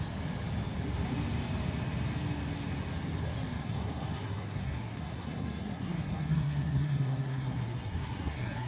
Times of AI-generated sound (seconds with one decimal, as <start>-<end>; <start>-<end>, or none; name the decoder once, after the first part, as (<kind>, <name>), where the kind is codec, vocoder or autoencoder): 3.6-8.7 (codec, SNAC)